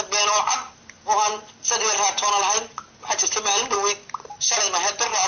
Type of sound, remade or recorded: recorded